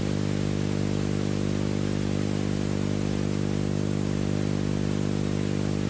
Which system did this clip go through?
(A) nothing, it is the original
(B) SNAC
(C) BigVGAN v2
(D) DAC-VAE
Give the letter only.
A